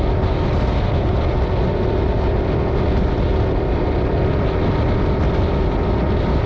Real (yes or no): yes